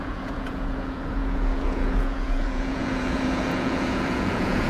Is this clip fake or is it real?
fake